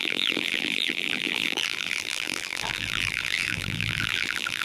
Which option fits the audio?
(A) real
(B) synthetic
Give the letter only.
B